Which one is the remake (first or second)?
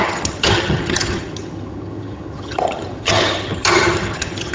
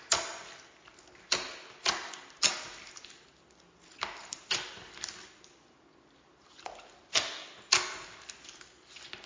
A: first